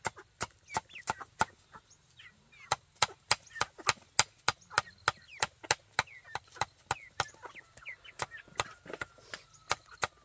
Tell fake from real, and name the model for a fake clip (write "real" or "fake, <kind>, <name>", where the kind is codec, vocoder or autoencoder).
real